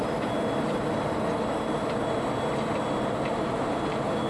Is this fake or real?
real